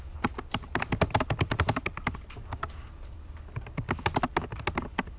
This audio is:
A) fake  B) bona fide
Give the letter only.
B